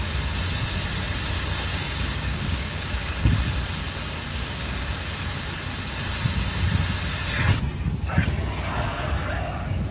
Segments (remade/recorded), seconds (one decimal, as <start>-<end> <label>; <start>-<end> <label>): 0.0-1.7 recorded; 1.7-3.1 remade; 3.1-4.3 recorded; 4.3-5.1 remade; 5.1-9.9 recorded